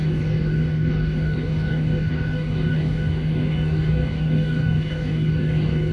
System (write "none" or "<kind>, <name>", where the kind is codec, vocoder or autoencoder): codec, DAC